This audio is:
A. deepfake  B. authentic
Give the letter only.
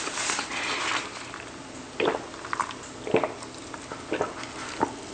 B